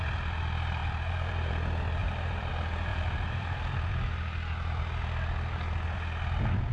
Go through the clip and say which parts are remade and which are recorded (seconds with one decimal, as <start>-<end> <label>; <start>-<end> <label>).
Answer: 0.0-0.8 recorded; 0.8-1.5 remade; 1.5-2.0 recorded; 2.0-2.5 remade; 2.5-2.9 recorded; 2.9-3.7 remade; 3.7-6.7 recorded